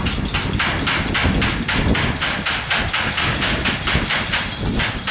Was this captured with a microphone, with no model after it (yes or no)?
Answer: yes